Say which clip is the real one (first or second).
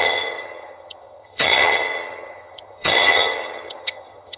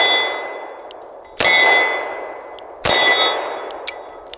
second